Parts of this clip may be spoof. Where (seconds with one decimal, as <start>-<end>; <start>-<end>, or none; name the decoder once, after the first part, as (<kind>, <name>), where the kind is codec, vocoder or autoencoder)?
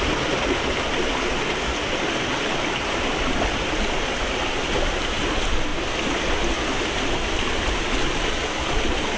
none